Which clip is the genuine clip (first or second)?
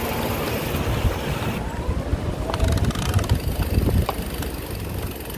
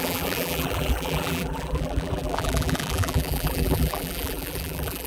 first